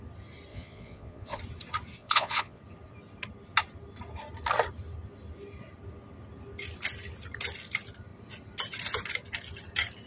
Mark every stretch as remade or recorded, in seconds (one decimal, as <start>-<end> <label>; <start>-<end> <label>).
0.0-0.5 recorded; 0.5-1.4 remade; 1.4-2.0 recorded; 2.0-2.6 remade; 2.6-10.1 recorded